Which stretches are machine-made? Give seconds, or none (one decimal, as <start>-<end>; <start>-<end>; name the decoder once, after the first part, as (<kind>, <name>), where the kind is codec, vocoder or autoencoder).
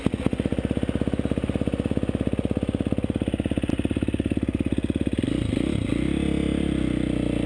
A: none